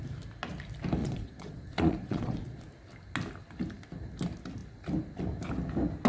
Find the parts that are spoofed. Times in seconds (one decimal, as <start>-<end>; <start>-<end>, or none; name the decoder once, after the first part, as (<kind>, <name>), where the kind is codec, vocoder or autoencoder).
1.0-2.7 (vocoder, Vocos)